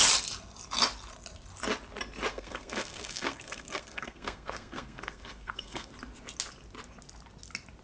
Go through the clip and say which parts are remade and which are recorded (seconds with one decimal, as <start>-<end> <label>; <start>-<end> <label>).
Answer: 0.0-2.3 recorded; 2.3-5.9 remade; 5.9-7.8 recorded